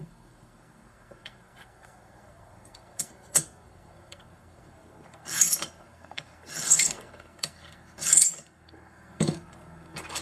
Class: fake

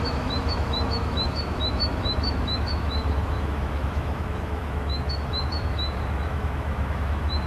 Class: fake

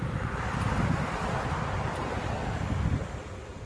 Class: real